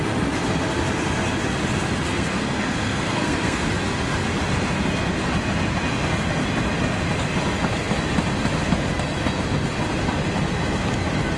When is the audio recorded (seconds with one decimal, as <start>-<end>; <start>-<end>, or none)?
0.0-2.1; 3.7-11.4